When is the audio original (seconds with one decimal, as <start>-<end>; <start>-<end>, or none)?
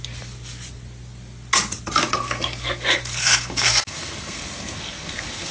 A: 0.0-2.1